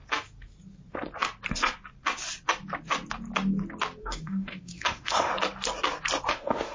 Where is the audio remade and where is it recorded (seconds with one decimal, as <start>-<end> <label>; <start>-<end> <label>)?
0.0-4.0 recorded; 4.0-5.3 remade; 5.3-6.3 recorded; 6.3-6.7 remade